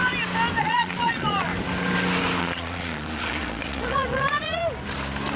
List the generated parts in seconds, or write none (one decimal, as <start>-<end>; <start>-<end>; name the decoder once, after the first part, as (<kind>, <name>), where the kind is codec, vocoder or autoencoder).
0.6-1.5 (vocoder, Vocos); 2.4-4.6